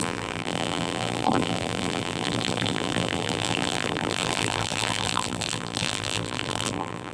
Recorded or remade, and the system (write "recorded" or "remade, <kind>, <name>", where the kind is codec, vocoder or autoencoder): remade, vocoder, BigVGAN v2